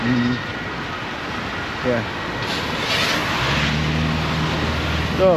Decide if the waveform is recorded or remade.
recorded